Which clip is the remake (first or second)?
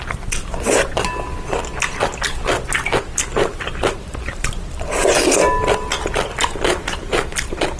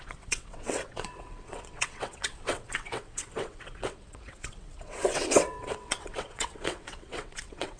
second